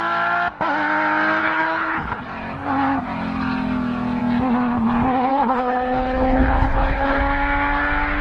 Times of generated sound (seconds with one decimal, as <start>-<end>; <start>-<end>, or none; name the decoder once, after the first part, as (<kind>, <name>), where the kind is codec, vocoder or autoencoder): 1.4-2.2 (codec, HILCodec); 5.3-7.2